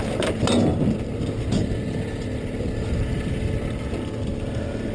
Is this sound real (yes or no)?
yes